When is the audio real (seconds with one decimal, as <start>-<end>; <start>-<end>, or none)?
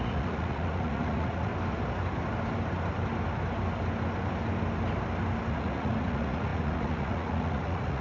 1.5-5.5